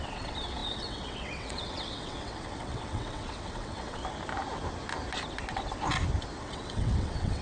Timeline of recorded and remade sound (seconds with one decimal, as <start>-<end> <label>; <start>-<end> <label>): 0.0-4.0 remade; 4.0-6.4 recorded; 6.4-7.4 remade